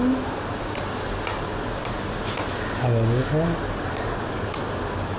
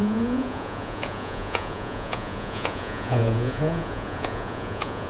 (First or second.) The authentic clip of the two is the first